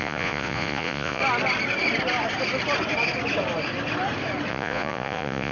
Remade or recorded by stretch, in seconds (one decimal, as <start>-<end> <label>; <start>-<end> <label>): 0.0-1.2 remade; 1.2-4.5 recorded; 4.5-5.5 remade